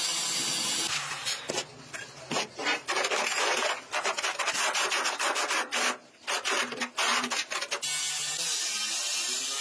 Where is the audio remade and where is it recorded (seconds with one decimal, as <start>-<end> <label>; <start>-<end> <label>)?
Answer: 0.0-9.6 recorded